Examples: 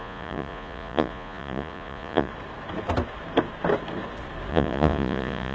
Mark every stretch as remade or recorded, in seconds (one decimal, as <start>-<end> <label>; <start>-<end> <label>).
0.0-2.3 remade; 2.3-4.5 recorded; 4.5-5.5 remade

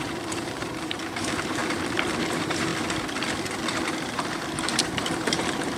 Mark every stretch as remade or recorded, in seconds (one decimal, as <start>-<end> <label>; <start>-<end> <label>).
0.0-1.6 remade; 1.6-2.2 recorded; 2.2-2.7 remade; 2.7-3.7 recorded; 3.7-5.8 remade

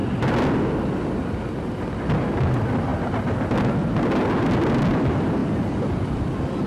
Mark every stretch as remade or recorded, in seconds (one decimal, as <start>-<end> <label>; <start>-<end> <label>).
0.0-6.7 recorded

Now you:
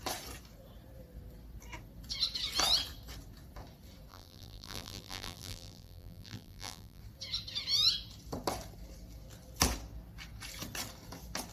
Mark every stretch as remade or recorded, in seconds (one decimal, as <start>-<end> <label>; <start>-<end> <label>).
0.0-4.1 recorded; 4.1-7.0 remade; 7.0-11.5 recorded

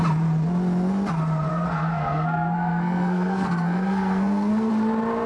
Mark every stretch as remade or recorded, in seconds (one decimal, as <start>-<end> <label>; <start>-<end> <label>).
0.0-1.5 recorded; 1.5-4.7 remade; 4.7-5.3 recorded

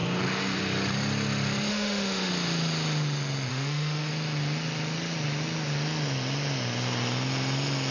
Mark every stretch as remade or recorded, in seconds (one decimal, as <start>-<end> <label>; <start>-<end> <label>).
0.0-1.7 recorded; 1.7-2.3 remade; 2.3-3.5 recorded; 3.5-4.1 remade; 4.1-7.9 recorded